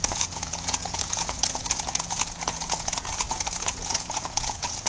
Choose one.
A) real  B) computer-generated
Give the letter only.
B